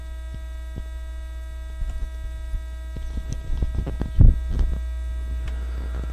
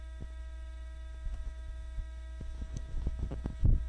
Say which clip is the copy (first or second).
second